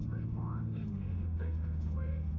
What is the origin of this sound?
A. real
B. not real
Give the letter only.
B